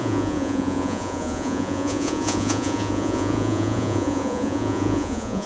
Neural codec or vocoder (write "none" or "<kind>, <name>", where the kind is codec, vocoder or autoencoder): vocoder, Vocos